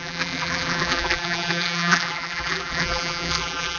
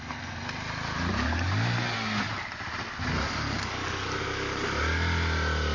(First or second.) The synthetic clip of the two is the first